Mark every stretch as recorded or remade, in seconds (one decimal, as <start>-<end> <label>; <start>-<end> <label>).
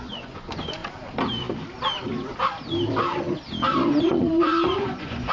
0.0-0.8 remade; 0.8-4.0 recorded; 4.0-5.3 remade